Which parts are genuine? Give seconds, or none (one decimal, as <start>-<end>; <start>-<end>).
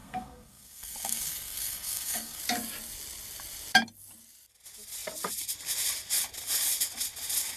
2.4-7.6